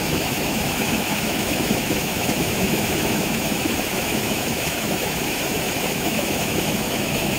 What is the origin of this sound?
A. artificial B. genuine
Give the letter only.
A